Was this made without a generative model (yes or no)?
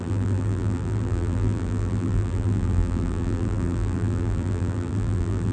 no